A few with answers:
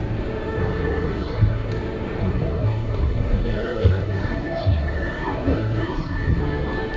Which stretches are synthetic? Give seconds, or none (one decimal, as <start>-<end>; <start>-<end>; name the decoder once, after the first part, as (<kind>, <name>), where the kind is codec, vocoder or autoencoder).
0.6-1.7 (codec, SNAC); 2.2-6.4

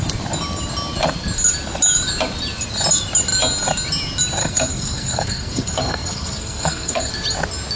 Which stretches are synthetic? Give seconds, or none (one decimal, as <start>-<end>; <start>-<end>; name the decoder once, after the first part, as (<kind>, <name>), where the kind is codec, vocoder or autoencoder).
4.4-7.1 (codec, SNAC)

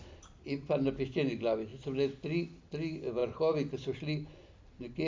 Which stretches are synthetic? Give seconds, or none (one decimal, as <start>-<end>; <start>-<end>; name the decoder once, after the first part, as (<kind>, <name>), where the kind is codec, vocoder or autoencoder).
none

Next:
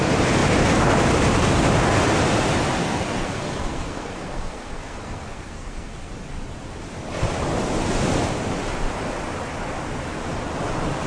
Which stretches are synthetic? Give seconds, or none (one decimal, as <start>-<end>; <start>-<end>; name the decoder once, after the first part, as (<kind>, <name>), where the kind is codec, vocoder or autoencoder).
2.8-6.1 (codec, SNAC)